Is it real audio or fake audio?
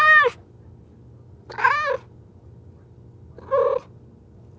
real